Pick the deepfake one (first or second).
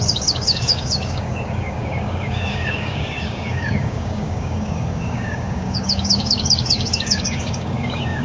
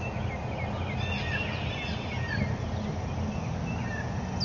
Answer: first